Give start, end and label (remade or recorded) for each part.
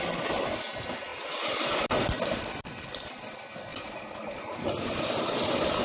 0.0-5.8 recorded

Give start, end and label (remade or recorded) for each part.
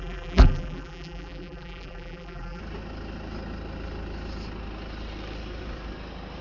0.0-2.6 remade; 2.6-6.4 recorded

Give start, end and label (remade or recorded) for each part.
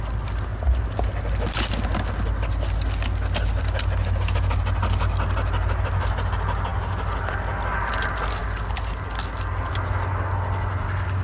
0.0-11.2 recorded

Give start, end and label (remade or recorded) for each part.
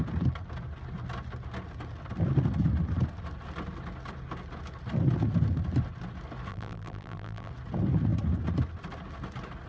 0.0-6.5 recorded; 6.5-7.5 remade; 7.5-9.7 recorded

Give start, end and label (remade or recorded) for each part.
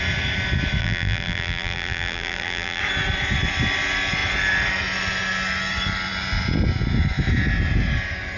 0.0-0.8 recorded; 0.8-2.8 remade; 2.8-8.4 recorded